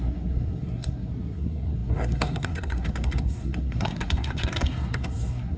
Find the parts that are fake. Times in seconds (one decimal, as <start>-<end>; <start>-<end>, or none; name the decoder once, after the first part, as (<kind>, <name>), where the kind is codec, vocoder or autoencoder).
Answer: 0.0-5.6 (codec, SNAC)